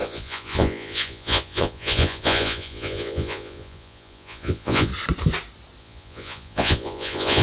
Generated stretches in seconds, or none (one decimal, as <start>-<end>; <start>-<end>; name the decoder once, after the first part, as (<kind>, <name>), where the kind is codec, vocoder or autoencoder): 0.0-4.9 (vocoder, Vocos); 5.8-7.4